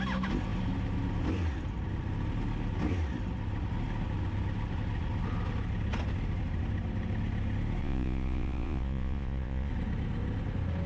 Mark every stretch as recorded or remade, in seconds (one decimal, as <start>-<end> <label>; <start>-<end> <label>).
0.0-7.8 recorded; 7.8-9.7 remade; 9.7-10.9 recorded